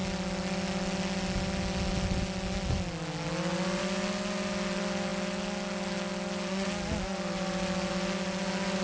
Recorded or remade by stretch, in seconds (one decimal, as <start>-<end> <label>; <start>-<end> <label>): 0.0-8.8 recorded

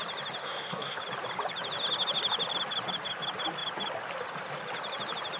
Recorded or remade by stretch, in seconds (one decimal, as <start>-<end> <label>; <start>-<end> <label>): 0.0-0.4 recorded; 0.4-1.0 remade; 1.0-5.4 recorded

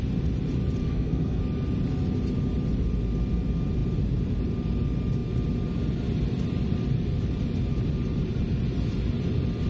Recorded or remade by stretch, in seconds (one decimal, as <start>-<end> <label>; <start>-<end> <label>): 0.0-0.8 recorded; 0.8-1.4 remade; 1.4-9.7 recorded

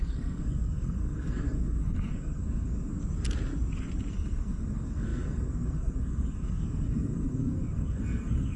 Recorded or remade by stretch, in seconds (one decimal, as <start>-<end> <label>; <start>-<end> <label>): 0.0-2.9 remade; 2.9-4.1 recorded; 4.1-8.6 remade

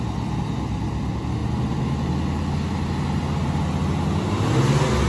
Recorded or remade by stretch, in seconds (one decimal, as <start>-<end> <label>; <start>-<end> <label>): 0.0-5.1 recorded

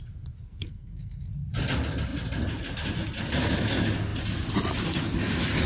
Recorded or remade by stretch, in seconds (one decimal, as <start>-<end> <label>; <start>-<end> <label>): 0.0-0.4 recorded; 0.4-1.3 remade; 1.3-5.7 recorded